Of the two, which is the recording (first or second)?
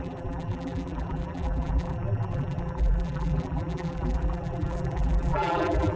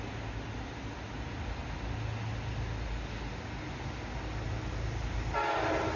second